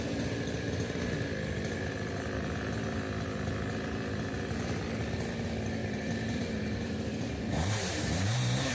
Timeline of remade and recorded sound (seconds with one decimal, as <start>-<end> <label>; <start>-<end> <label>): 0.0-5.8 recorded; 5.8-8.7 remade